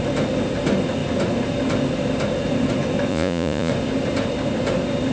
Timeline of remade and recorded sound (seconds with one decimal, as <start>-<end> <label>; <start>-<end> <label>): 0.0-3.1 recorded; 3.1-3.7 remade; 3.7-5.1 recorded